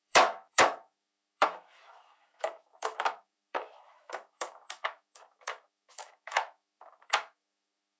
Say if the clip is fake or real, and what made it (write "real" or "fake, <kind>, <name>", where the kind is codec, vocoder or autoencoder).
fake, autoencoder, DAC-VAE